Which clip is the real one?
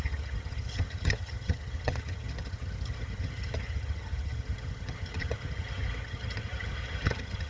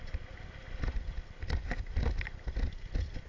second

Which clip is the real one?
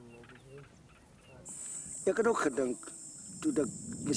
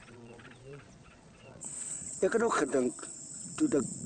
first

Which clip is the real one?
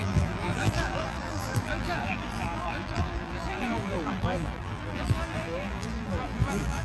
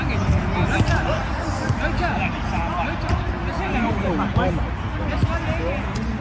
second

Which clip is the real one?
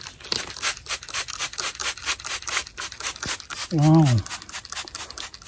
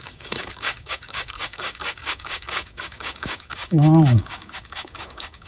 first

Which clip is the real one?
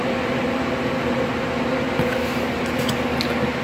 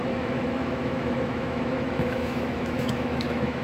first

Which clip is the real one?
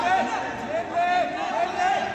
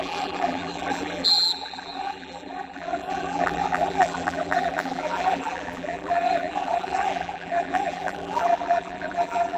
first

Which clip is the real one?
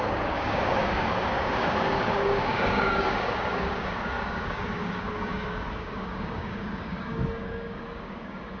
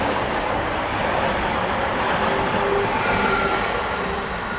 second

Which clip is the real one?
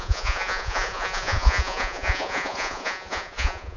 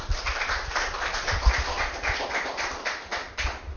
second